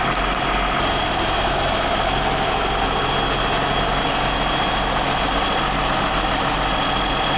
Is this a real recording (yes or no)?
yes